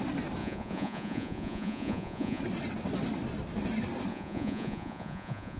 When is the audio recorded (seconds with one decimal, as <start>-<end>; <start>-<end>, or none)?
0.0-0.4; 2.4-4.1